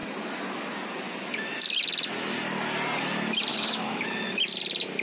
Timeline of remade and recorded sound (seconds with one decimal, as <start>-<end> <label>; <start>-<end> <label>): 0.0-3.5 recorded; 3.5-4.4 remade; 4.4-5.0 recorded